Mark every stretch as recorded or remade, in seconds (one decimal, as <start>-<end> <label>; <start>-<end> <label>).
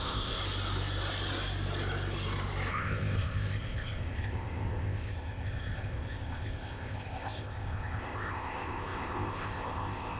0.0-0.4 remade; 0.4-2.7 recorded; 2.7-10.2 remade